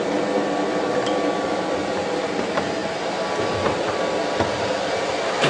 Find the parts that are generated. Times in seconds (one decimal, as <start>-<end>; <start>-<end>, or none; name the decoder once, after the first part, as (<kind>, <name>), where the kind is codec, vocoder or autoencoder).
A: none